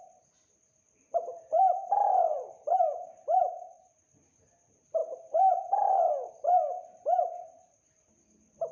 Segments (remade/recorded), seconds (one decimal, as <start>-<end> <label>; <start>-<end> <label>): 0.0-8.7 remade

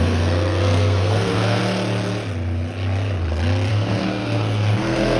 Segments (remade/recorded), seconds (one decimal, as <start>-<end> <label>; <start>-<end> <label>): 0.0-1.6 remade; 1.6-3.7 recorded; 3.7-5.2 remade

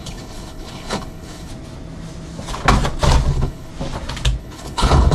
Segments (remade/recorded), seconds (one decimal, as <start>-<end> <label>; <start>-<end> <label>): 0.0-1.5 remade; 1.5-3.3 recorded; 3.3-3.7 remade; 3.7-4.4 recorded; 4.4-5.1 remade

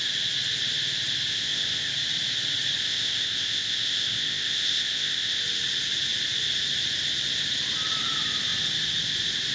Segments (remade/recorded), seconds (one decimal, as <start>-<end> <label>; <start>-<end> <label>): 0.0-1.3 recorded; 1.3-1.9 remade; 1.9-2.8 recorded; 2.8-5.4 remade; 5.4-9.5 recorded

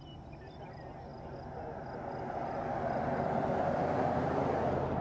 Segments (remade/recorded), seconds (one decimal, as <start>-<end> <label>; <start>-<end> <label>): 0.0-5.0 recorded